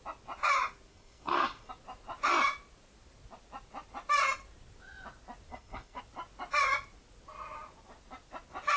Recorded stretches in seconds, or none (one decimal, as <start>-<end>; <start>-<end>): 0.0-0.9; 1.7-5.5; 6.0-8.8